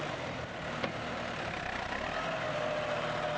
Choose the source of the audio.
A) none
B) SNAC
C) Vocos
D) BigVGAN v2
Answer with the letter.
D